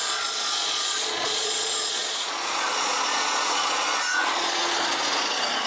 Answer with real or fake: fake